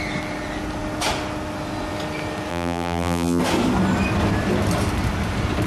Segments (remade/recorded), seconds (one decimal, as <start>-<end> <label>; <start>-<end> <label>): 0.0-2.5 recorded; 2.5-3.4 remade; 3.4-5.7 recorded